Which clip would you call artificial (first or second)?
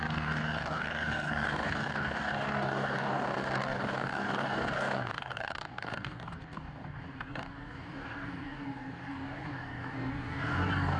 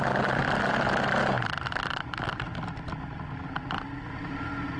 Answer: first